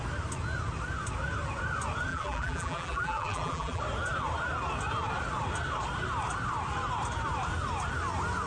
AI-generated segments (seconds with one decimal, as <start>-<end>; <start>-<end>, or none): 2.1-3.8